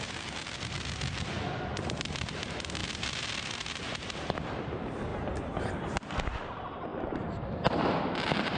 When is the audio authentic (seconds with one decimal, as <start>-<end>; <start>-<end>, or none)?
0.0-2.8; 4.6-8.6